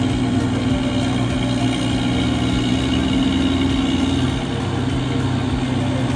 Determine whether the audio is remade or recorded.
recorded